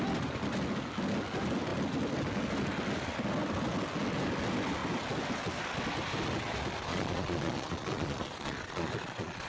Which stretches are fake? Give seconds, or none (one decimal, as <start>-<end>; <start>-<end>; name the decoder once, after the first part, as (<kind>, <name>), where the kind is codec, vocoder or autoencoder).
6.9-9.5 (vocoder, Vocos)